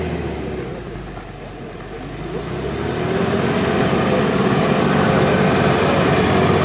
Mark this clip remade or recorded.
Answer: recorded